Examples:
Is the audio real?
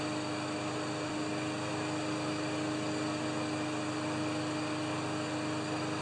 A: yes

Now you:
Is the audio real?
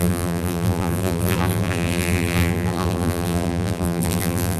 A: no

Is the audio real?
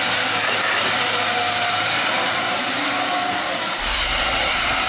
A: no